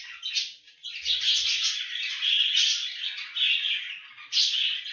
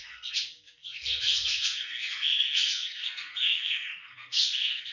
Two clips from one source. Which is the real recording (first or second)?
first